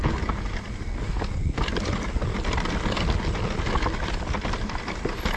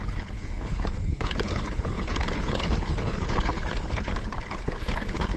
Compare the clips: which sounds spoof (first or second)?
second